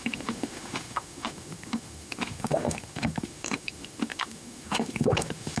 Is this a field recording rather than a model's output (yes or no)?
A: no